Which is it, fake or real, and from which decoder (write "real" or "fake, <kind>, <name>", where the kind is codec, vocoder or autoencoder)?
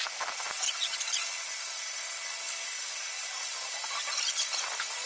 real